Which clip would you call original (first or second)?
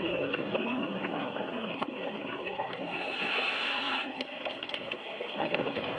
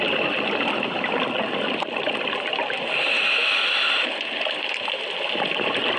second